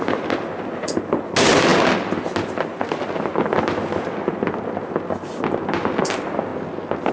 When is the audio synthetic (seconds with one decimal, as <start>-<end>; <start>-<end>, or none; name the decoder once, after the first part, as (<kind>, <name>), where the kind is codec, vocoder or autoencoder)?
none

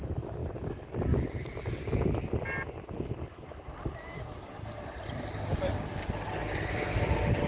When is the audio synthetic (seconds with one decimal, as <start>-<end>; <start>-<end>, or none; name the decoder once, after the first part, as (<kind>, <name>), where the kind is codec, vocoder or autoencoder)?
0.0-7.5 (vocoder, BigVGAN v2)